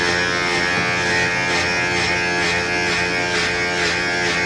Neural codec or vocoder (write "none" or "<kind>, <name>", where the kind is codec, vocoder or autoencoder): none